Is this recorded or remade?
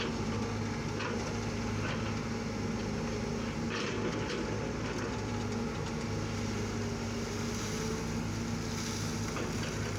recorded